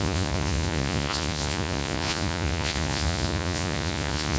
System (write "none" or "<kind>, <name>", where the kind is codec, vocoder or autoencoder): vocoder, Vocos